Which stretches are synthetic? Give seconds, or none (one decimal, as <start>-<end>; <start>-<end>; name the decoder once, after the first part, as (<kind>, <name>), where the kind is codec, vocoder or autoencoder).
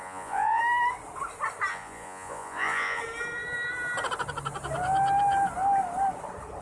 0.0-0.6 (vocoder, Vocos); 1.7-3.0